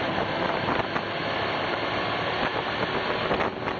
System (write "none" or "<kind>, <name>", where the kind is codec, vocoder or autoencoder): none